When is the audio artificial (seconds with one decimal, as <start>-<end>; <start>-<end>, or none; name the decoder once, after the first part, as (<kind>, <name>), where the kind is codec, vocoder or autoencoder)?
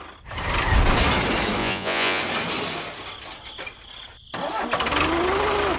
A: 1.6-2.2 (vocoder, Vocos)